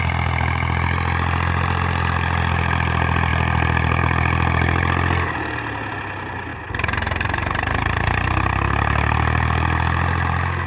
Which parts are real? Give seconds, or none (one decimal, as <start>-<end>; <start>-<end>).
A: 0.0-6.5; 8.5-10.7